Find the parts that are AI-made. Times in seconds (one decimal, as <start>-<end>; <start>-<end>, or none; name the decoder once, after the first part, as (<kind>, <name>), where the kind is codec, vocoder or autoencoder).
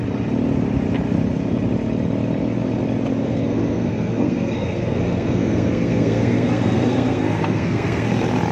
3.2-8.1 (codec, SNAC)